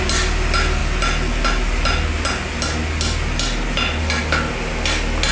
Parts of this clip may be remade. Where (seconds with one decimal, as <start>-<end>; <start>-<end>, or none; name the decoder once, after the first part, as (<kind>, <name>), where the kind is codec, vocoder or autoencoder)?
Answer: none